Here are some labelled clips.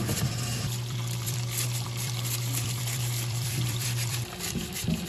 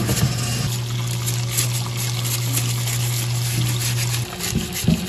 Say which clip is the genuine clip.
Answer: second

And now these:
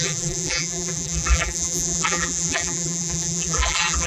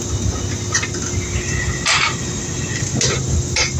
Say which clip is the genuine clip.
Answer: second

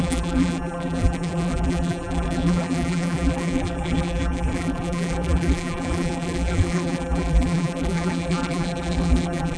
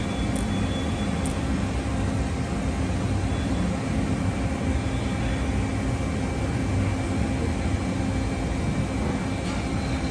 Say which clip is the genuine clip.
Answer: second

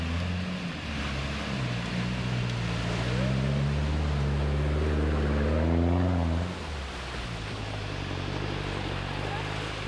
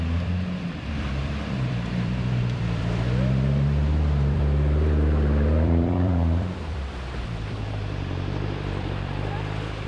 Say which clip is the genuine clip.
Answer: first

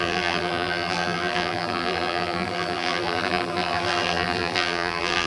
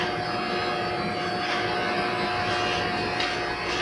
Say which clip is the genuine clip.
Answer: second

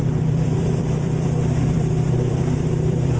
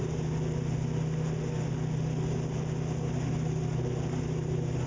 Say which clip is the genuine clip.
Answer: second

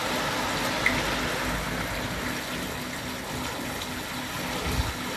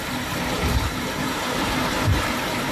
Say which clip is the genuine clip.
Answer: first